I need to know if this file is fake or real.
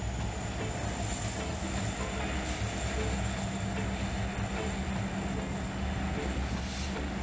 real